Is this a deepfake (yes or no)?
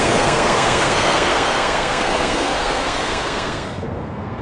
yes